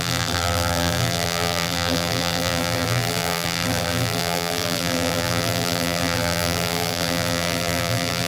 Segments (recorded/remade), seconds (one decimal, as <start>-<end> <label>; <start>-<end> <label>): 0.0-8.3 remade